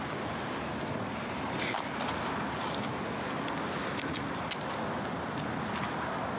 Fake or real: real